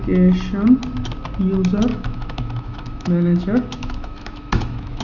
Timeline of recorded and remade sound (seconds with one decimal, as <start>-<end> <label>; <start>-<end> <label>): 0.0-1.9 recorded; 1.9-5.0 remade